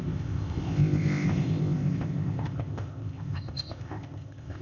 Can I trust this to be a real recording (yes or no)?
no